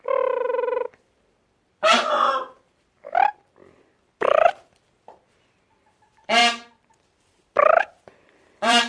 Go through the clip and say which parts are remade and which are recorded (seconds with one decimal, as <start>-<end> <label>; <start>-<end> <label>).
0.0-6.4 remade; 6.4-6.9 recorded; 6.9-8.9 remade

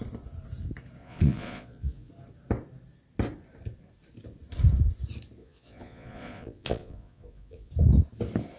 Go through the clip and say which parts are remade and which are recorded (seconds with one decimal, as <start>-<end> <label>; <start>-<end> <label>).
0.0-1.0 recorded; 1.0-2.1 remade; 2.1-5.4 recorded; 5.4-7.7 remade; 7.7-8.6 recorded

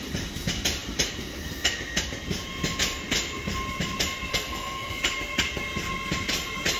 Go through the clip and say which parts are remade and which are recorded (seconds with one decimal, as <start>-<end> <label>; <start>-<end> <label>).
0.0-4.3 recorded; 4.3-5.0 remade; 5.0-6.8 recorded

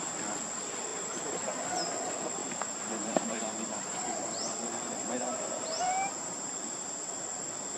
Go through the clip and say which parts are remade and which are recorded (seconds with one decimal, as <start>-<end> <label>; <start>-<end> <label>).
0.0-0.9 recorded; 0.9-1.4 remade; 1.4-2.4 recorded; 2.4-4.3 remade; 4.3-5.0 recorded; 5.0-6.4 remade; 6.4-7.8 recorded

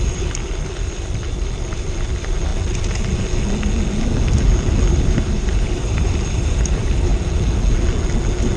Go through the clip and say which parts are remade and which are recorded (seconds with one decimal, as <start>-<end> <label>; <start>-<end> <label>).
0.0-2.5 remade; 2.5-4.9 recorded; 4.9-7.1 remade; 7.1-8.6 recorded

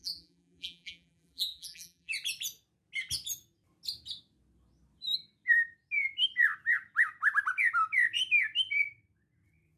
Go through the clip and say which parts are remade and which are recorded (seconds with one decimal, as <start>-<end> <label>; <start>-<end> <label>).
0.0-2.1 remade; 2.1-9.8 recorded